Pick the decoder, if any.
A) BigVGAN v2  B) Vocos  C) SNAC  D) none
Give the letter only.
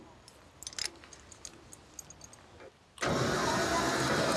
D